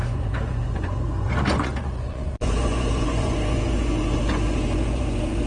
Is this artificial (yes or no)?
yes